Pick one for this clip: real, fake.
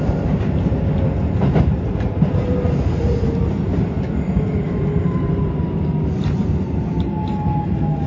fake